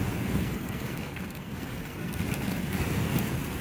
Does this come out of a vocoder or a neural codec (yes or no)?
yes